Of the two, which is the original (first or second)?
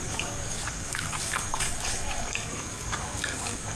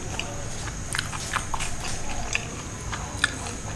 second